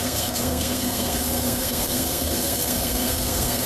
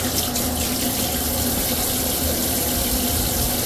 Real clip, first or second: second